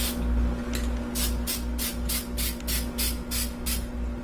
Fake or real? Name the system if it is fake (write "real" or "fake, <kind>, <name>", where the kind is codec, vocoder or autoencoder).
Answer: real